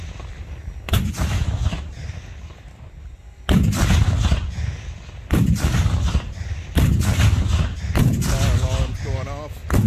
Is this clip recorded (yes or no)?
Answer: yes